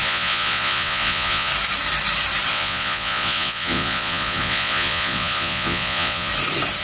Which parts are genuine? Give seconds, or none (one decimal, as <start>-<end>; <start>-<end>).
1.5-2.5; 6.3-6.8

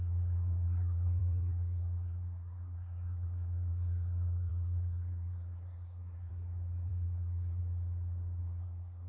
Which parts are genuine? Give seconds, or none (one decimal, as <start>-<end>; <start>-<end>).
6.3-6.9; 7.6-8.4

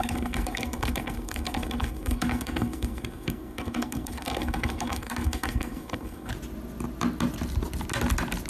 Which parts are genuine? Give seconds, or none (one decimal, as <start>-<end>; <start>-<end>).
6.3-8.5

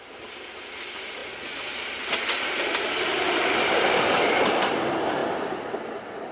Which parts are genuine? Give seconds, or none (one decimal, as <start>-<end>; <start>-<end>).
1.2-2.6; 5.2-6.3

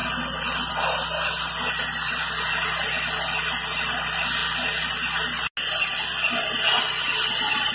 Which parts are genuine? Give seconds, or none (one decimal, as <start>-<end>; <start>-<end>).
0.0-7.7

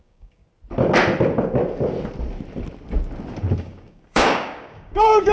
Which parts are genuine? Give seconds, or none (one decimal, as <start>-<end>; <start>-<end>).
0.4-3.6

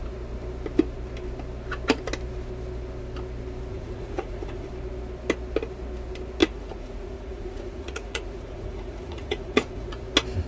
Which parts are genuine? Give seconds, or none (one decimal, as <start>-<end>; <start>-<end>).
0.0-3.7; 4.7-6.4; 10.1-10.5